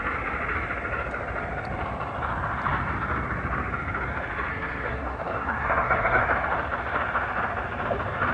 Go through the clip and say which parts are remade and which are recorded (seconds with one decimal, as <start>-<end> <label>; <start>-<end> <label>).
0.0-4.5 recorded; 4.5-6.2 remade; 6.2-8.3 recorded